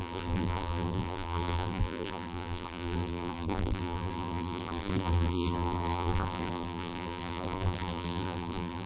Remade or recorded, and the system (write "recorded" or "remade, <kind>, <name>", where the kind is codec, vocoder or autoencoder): remade, vocoder, BigVGAN v2